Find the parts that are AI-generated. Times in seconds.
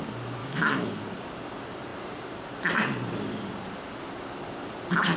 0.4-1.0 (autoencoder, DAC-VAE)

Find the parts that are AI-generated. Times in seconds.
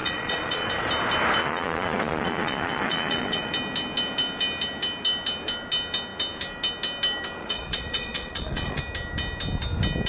0.0-0.7 (vocoder, Vocos); 1.4-3.5; 7.4-8.8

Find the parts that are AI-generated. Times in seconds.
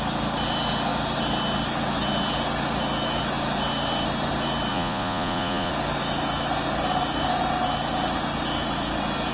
4.7-5.7 (vocoder, Vocos)